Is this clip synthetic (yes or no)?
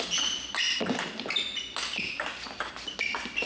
no